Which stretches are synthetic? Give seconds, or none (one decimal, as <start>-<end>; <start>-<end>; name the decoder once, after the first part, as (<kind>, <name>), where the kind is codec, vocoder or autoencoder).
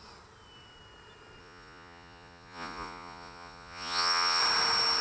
1.4-4.4 (vocoder, Vocos)